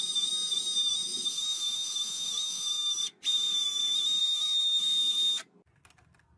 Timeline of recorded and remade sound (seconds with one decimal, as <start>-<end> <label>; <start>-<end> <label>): 0.0-0.8 recorded; 0.8-3.0 remade; 3.0-4.2 recorded; 4.2-4.8 remade; 4.8-6.4 recorded